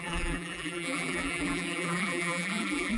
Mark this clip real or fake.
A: fake